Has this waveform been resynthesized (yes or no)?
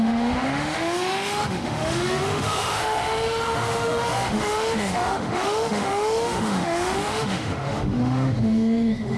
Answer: yes